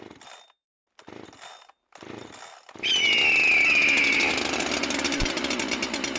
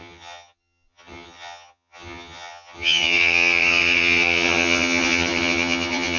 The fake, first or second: second